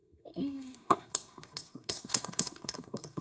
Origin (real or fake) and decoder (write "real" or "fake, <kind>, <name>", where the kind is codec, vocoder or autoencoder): fake, codec, SNAC